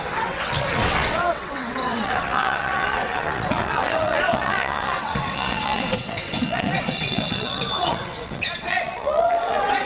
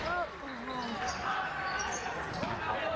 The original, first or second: second